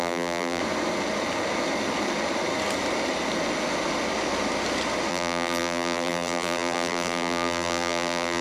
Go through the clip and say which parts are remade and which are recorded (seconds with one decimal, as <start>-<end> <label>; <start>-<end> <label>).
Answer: 0.0-0.6 remade; 0.6-5.1 recorded; 5.1-8.4 remade